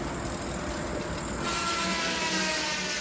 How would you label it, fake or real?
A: real